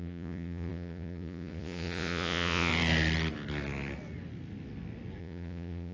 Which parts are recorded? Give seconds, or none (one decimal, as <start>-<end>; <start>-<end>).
2.7-5.2